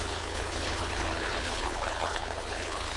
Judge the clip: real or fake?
fake